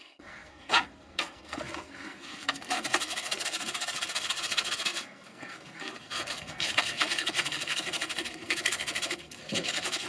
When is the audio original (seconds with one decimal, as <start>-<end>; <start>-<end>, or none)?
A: none